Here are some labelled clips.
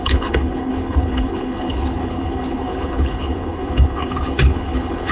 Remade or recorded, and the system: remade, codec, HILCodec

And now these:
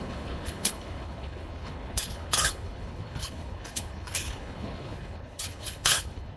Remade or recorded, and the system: remade, codec, HILCodec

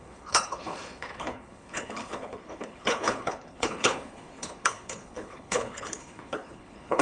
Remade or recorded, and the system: remade, codec, HILCodec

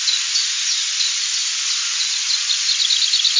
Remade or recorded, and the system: recorded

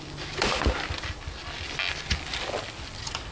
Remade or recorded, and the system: recorded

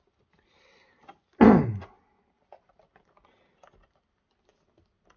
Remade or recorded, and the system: recorded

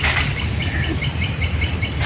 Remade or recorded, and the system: recorded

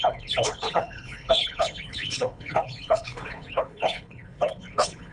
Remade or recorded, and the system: remade, codec, HILCodec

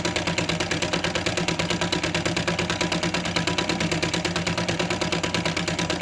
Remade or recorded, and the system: recorded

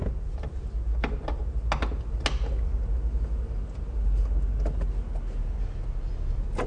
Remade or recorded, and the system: recorded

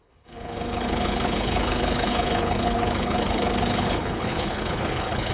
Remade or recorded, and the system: remade, codec, HILCodec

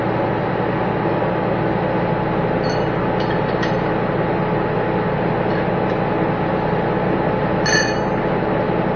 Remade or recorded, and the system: recorded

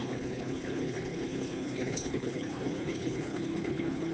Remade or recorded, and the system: remade, codec, HILCodec